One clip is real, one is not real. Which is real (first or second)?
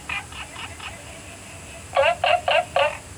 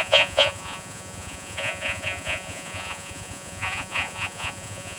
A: first